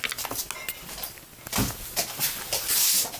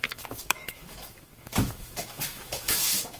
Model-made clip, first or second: second